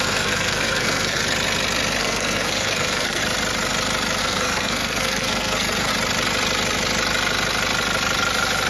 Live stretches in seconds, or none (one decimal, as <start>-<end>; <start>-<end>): 1.2-2.0; 3.2-4.2; 5.9-8.7